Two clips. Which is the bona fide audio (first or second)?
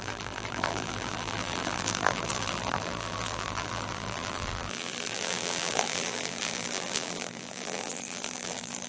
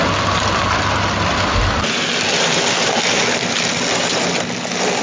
second